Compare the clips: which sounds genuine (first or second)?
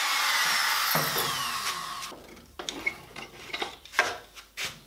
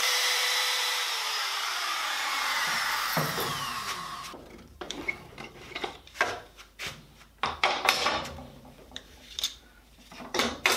first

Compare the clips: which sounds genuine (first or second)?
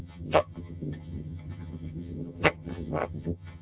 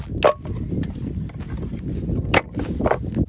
second